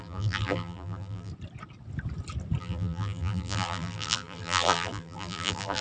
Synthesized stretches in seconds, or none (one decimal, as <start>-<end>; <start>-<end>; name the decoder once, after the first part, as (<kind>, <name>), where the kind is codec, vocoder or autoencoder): 0.0-1.3 (vocoder, BigVGAN v2); 2.6-5.8